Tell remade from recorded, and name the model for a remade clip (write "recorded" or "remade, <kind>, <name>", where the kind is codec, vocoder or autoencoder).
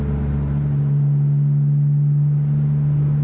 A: recorded